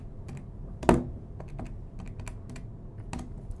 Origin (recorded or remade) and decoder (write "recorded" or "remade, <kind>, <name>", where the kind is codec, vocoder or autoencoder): recorded